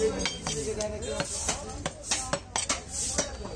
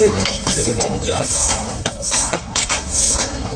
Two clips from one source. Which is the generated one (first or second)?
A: second